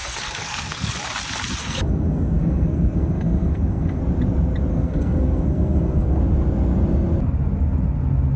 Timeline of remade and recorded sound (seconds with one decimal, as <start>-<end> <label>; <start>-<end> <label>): 0.0-0.9 remade; 0.9-1.6 recorded; 1.6-4.0 remade; 4.0-4.7 recorded; 4.7-6.2 remade; 6.2-8.4 recorded